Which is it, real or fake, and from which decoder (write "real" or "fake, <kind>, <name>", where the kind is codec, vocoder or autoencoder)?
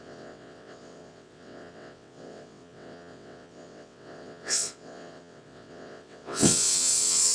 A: fake, vocoder, WaveNeXt